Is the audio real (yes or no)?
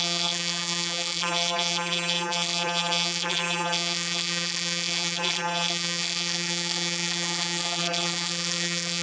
no